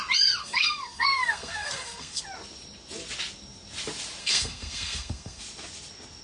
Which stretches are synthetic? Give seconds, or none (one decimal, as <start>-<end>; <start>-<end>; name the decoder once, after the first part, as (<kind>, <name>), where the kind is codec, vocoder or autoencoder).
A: 0.4-2.2 (codec, SNAC); 4.2-5.4